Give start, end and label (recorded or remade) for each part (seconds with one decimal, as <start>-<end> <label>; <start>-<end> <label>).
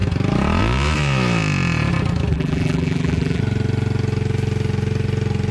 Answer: 0.0-2.3 recorded; 2.3-3.4 remade; 3.4-5.5 recorded